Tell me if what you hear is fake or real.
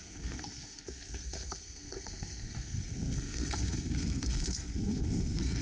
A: fake